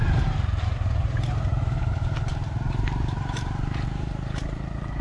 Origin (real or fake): fake